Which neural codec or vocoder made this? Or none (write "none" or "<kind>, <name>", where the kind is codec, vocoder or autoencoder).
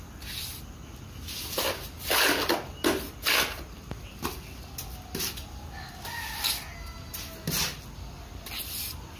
none